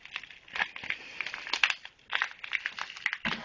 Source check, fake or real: real